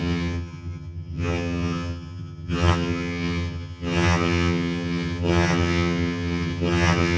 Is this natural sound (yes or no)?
no